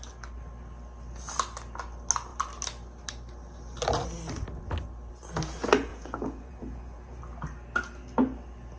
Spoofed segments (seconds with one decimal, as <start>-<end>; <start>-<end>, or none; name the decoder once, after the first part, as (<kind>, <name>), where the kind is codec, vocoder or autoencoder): 5.9-7.2 (vocoder, Vocos)